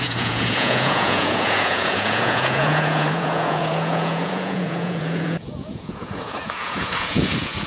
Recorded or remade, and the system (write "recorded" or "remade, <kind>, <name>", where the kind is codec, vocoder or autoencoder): remade, vocoder, Vocos